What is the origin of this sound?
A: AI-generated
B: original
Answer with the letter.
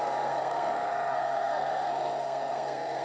A